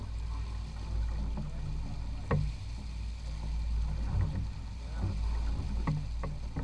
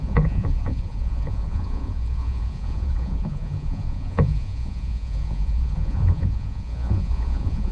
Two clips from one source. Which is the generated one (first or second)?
second